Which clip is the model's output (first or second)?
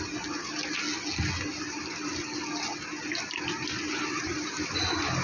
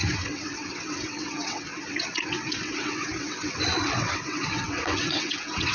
second